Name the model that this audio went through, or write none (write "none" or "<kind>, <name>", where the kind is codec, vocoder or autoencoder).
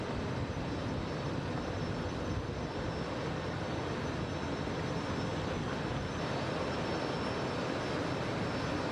none